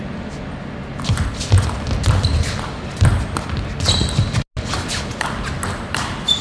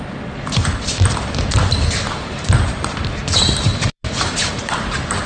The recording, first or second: first